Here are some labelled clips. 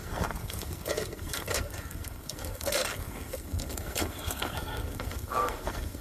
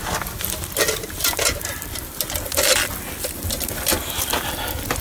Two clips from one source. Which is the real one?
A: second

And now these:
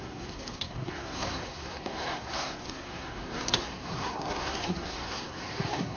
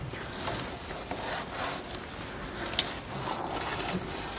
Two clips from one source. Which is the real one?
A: second